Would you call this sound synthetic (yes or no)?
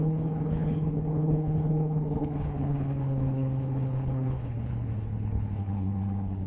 yes